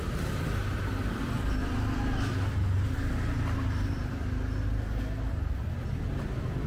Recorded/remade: recorded